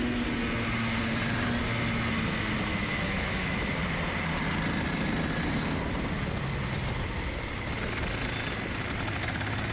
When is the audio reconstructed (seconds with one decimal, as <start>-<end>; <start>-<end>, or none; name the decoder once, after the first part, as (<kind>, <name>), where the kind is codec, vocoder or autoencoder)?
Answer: 2.7-3.6 (autoencoder, DAC-VAE)